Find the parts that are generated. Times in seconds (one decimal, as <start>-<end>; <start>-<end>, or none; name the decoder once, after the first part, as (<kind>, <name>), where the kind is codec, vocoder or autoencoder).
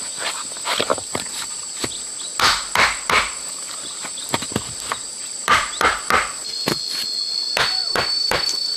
0.9-2.7 (vocoder, BigVGAN v2); 3.7-5.9